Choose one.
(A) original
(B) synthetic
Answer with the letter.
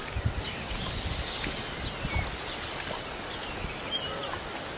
A